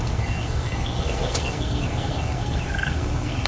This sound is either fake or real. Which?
fake